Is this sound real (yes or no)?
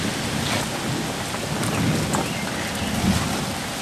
yes